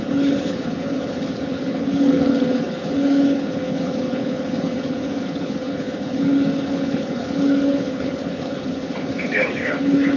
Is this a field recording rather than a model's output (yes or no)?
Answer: no